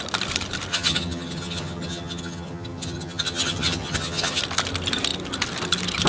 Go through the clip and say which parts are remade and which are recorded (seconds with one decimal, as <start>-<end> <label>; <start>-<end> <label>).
0.0-0.7 recorded; 0.7-4.4 remade; 4.4-6.1 recorded